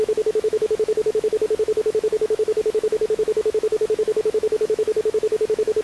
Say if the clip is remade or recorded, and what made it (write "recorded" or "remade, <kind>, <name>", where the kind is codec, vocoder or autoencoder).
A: remade, autoencoder, DAC-VAE